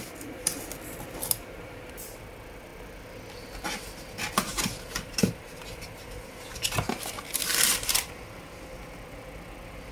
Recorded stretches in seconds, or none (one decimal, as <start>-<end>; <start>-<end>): 0.0-4.5; 6.4-8.2; 8.8-9.9